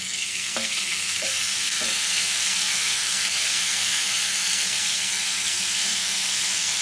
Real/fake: fake